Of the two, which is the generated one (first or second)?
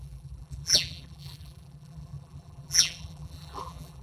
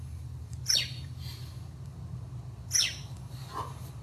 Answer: first